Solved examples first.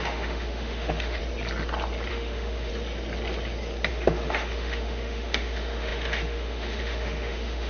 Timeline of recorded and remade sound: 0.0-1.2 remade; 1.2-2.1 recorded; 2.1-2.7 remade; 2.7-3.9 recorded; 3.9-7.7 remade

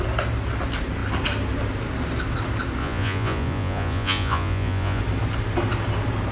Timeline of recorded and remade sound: 0.0-2.8 recorded; 2.8-5.0 remade; 5.0-6.3 recorded

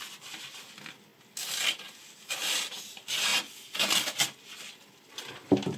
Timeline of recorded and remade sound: 0.0-5.8 recorded

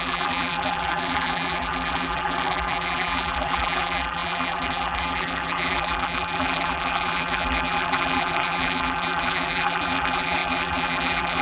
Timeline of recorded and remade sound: 0.0-11.4 remade

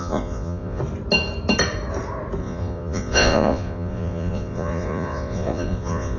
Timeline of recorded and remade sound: 0.0-0.8 remade; 0.8-2.4 recorded; 2.4-6.2 remade

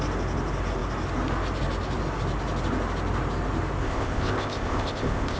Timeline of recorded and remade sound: 0.0-3.8 recorded; 3.8-5.4 remade